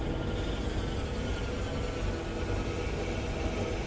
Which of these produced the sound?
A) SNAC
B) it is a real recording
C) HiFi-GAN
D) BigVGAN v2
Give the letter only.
B